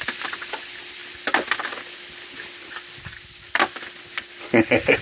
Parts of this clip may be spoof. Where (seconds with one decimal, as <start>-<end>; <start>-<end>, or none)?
none